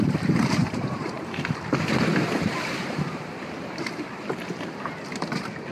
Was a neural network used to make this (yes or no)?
yes